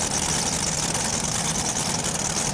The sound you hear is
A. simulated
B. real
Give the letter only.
B